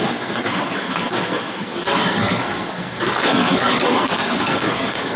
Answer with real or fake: fake